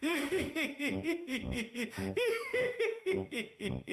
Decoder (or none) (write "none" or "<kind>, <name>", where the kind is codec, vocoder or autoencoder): autoencoder, DAC-VAE